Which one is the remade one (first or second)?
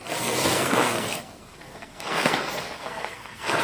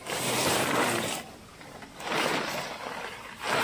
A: first